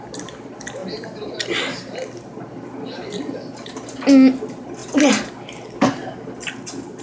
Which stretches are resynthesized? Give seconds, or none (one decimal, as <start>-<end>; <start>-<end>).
none